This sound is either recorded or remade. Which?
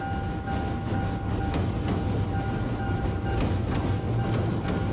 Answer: recorded